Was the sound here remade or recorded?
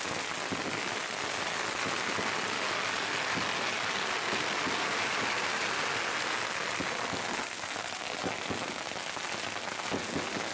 recorded